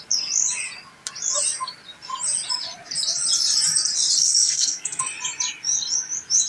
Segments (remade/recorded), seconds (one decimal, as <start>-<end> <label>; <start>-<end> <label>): 0.0-4.2 recorded; 4.2-5.0 remade; 5.0-6.5 recorded